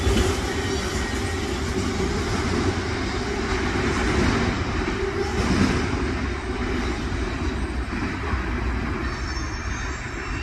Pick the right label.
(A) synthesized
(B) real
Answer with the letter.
B